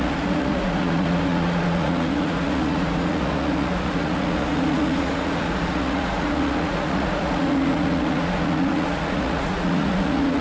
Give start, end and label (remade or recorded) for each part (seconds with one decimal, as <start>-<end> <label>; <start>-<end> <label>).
0.0-10.4 remade